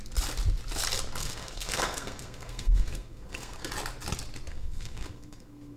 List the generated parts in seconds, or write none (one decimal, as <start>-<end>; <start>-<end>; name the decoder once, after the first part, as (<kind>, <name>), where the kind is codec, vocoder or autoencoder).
1.2-3.7 (codec, SNAC); 4.5-5.8

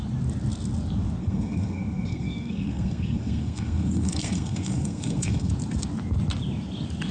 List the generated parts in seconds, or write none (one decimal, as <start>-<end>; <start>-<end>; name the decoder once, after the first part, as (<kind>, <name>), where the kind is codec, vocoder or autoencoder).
1.2-5.5 (codec, SNAC)

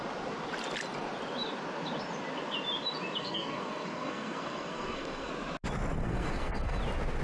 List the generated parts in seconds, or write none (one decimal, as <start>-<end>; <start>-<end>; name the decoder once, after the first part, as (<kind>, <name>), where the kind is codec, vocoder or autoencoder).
3.2-5.3 (codec, SNAC); 6.0-6.8

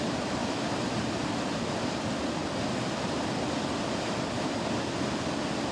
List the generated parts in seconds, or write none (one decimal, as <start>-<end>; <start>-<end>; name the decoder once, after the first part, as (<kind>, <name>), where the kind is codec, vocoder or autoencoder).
none

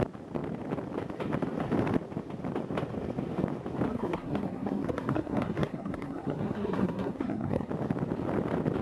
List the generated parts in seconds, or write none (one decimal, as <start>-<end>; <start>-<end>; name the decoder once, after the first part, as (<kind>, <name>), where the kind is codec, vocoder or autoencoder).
3.9-7.7 (codec, SNAC)